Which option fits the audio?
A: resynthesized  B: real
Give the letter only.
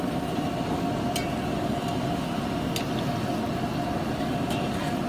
B